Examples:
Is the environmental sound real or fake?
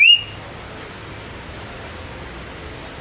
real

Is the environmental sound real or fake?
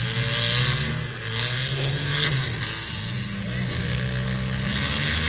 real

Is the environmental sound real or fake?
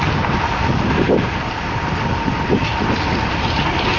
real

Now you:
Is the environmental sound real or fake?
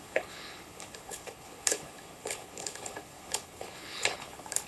fake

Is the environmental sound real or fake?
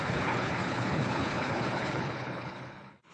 fake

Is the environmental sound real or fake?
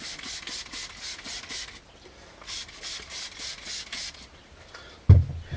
real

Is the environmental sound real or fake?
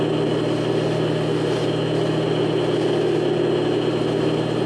real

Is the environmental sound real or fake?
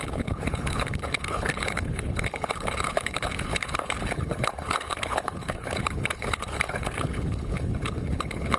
fake